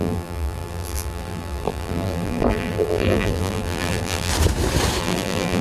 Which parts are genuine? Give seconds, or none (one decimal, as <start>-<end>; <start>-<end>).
4.3-5.0